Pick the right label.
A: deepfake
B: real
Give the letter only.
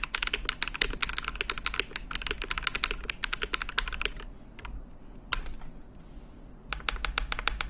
B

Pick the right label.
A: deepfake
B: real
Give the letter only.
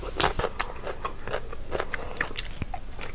B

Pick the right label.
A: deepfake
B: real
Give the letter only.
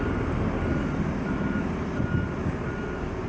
B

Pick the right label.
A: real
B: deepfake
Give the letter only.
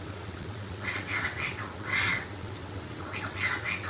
B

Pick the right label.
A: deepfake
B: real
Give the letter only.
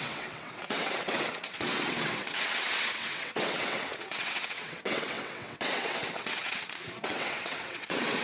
A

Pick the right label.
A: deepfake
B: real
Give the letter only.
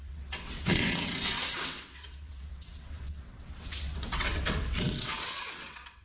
A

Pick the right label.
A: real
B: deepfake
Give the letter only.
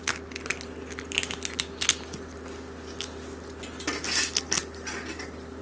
A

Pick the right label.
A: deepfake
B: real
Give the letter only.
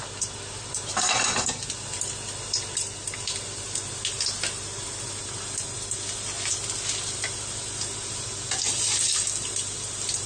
B